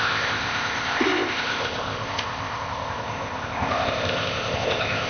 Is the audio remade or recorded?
remade